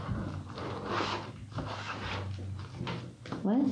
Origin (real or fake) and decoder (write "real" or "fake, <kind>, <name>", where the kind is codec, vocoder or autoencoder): real